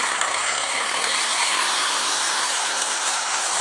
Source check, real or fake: fake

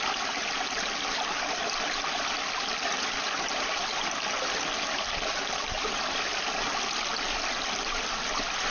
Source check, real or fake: real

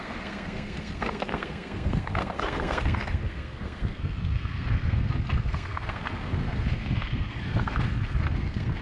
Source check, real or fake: fake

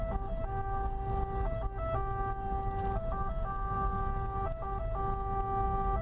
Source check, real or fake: real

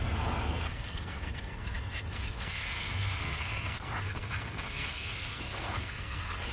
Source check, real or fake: fake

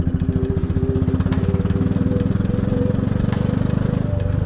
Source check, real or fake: real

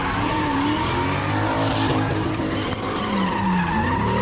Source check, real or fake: real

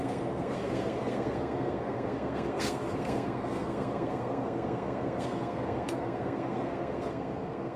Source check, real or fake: fake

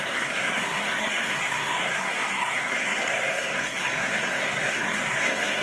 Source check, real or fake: fake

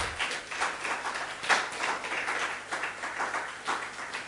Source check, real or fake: real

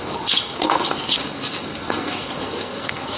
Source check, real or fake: fake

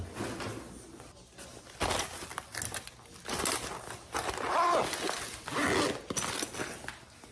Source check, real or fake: real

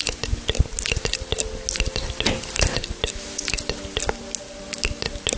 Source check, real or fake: real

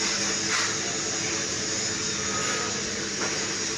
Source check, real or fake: real